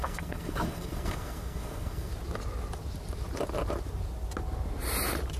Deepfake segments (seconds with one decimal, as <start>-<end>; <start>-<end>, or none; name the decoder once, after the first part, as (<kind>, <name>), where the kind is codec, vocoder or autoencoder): 0.0-2.1 (codec, SNAC)